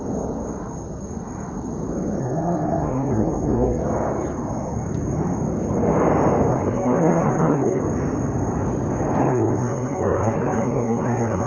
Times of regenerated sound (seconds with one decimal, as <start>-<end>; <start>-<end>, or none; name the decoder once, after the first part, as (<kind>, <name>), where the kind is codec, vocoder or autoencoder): 2.2-3.8 (codec, SNAC); 6.5-7.8; 9.2-11.5